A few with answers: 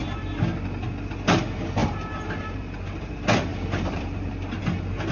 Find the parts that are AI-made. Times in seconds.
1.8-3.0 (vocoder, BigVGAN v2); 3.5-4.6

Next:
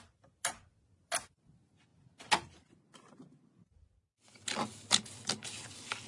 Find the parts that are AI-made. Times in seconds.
none